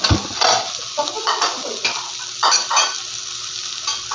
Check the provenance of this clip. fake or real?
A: real